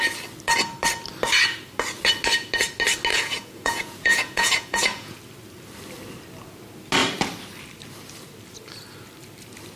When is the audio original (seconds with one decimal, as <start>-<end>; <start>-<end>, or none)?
0.0-3.1; 5.2-9.8